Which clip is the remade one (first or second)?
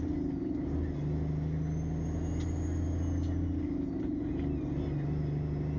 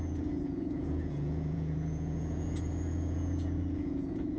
second